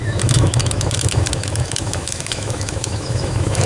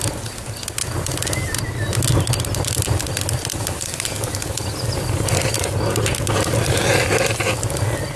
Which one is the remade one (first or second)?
first